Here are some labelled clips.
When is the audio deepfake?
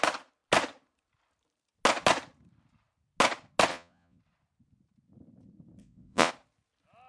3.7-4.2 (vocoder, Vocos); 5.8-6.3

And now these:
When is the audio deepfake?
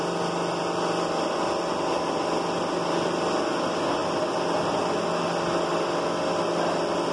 none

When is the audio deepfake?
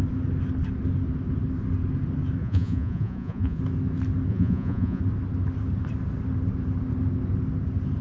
2.4-3.6 (vocoder, Vocos); 4.3-5.0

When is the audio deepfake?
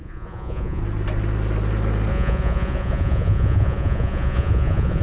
0.0-0.8 (vocoder, Vocos); 2.1-5.0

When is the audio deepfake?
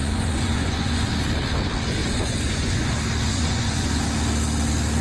0.0-1.1 (vocoder, Vocos); 2.0-2.9; 3.3-4.0